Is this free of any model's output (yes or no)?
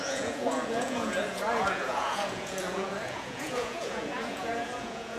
no